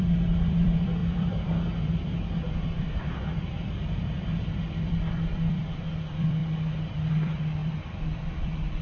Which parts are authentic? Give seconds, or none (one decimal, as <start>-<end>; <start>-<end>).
6.4-7.1